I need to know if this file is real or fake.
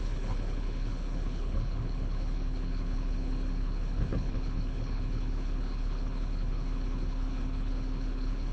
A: fake